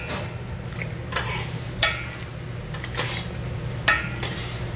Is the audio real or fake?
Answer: real